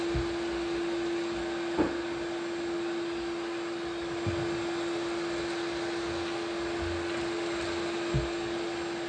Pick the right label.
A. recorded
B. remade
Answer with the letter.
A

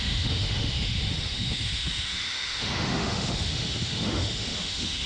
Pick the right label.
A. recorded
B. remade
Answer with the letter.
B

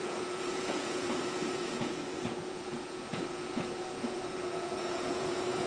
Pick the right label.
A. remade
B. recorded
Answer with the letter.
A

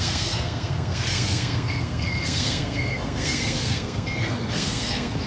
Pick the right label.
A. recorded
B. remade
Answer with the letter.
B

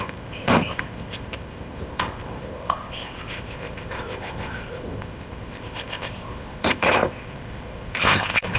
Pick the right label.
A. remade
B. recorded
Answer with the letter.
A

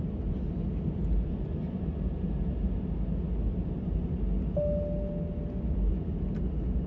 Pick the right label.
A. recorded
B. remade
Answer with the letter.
A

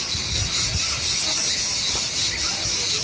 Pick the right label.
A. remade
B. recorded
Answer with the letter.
B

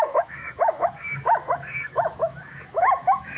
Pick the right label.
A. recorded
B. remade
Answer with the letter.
B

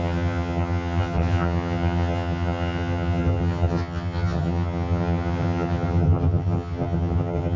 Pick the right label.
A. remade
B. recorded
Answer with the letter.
A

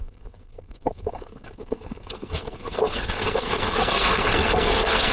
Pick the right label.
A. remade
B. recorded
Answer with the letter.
A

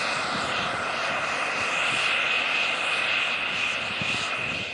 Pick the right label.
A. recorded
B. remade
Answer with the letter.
A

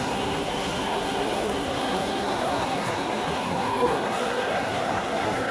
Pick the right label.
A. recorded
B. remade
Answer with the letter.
B